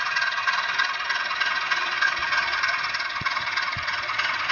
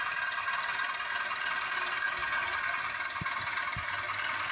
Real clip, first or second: second